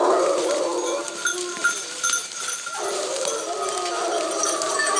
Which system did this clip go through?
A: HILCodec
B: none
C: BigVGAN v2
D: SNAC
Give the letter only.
B